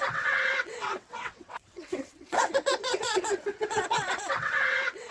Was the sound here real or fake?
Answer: fake